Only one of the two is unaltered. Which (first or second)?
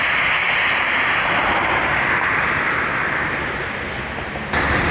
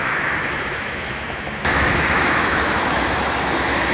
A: first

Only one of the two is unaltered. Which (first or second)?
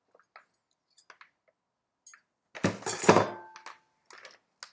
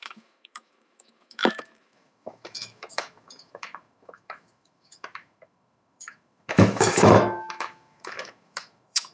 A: first